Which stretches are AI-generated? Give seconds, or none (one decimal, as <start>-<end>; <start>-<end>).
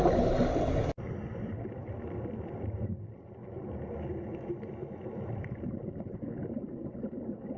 none